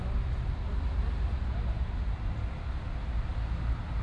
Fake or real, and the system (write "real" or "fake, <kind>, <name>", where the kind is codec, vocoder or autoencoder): real